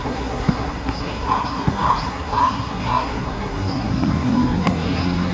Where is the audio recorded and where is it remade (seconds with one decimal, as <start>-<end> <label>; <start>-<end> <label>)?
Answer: 0.0-5.3 remade

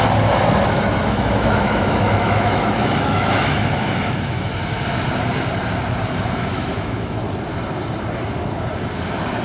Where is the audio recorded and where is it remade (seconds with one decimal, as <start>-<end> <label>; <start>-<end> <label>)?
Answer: 0.0-1.0 recorded; 1.0-4.5 remade; 4.5-6.5 recorded; 6.5-7.2 remade; 7.2-9.4 recorded

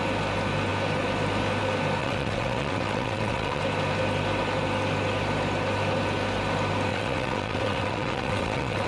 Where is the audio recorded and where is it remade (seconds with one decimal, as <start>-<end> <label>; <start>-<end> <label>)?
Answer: 0.0-2.0 recorded; 2.0-3.6 remade; 3.6-6.9 recorded; 6.9-8.9 remade

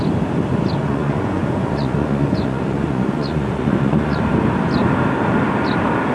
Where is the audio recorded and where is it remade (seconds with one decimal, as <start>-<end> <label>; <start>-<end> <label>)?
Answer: 0.0-0.8 recorded; 0.8-4.2 remade; 4.2-6.1 recorded